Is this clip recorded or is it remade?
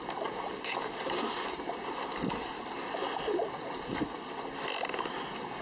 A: recorded